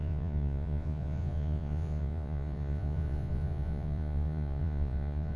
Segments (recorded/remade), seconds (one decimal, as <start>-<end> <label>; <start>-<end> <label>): 0.0-5.4 remade